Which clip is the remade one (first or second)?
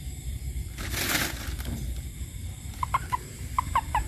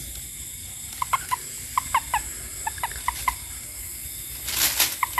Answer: first